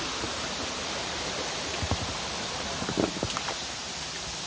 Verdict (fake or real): real